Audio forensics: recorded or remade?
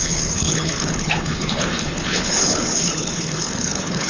remade